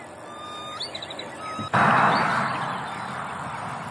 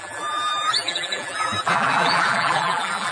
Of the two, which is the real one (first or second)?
first